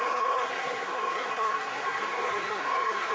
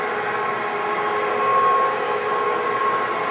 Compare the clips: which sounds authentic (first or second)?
second